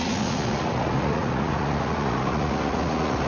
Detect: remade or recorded remade